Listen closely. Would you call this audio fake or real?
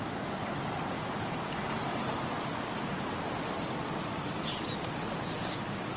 real